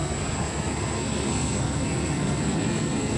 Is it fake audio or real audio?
fake